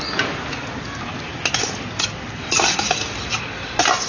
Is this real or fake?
real